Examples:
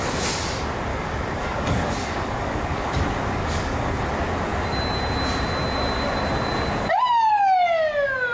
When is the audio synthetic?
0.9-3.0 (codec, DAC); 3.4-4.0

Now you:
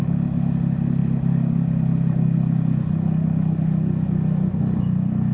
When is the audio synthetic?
none